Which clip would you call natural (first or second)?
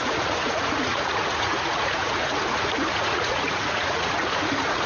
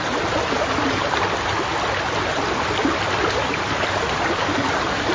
second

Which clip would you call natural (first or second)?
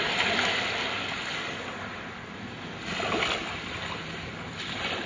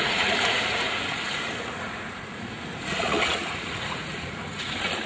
first